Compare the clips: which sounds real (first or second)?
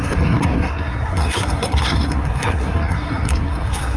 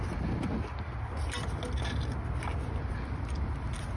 second